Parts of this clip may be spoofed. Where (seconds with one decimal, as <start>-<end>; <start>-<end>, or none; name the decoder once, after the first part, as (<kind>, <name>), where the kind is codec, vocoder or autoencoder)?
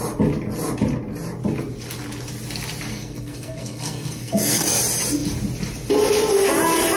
2.9-4.8 (codec, SNAC)